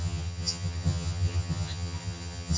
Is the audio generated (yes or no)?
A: yes